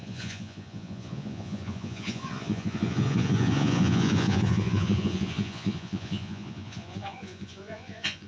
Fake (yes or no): yes